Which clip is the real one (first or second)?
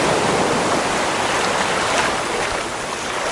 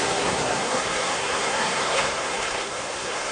first